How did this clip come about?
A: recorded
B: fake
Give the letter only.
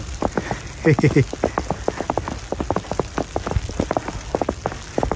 A